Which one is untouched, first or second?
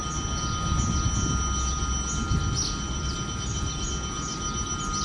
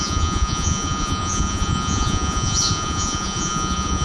first